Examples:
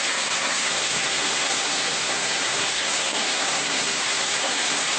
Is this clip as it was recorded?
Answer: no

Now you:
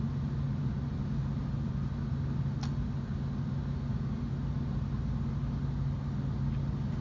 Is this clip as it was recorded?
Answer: yes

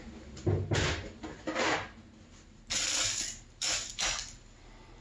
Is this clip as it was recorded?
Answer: yes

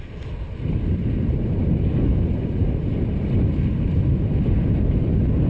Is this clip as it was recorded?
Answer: yes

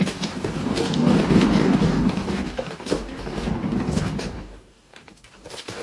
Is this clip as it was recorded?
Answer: no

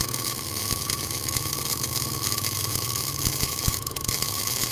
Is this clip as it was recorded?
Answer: no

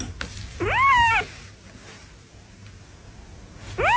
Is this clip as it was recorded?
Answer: yes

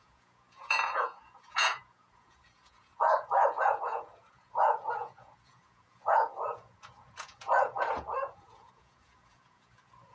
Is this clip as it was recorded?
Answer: no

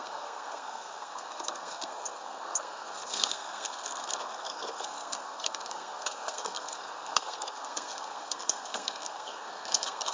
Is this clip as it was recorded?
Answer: no